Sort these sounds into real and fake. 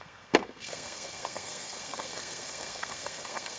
fake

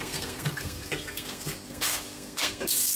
fake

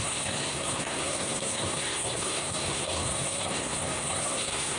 fake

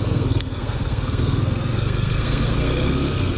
fake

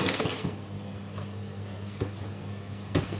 fake